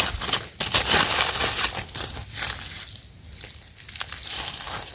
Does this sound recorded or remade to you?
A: recorded